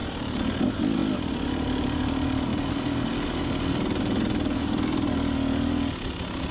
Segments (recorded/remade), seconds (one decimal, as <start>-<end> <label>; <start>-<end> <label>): 0.0-0.6 recorded; 0.6-1.0 remade; 1.0-1.5 recorded; 1.5-2.5 remade; 2.5-6.5 recorded